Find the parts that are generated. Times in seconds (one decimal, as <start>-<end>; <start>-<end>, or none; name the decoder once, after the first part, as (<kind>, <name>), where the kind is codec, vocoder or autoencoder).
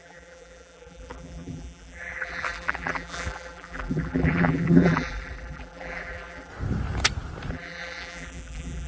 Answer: 0.0-6.5 (vocoder, BigVGAN v2); 7.5-8.9